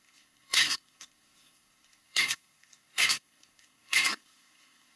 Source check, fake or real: fake